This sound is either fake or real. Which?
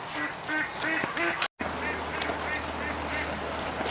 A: real